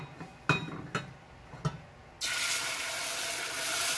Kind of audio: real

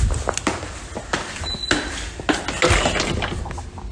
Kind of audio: real